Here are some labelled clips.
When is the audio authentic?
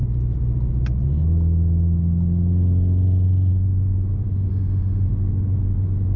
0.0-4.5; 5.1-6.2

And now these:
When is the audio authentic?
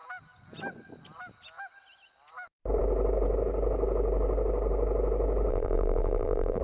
0.0-5.5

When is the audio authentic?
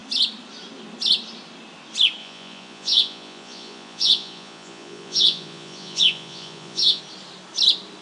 0.0-2.2; 7.0-8.0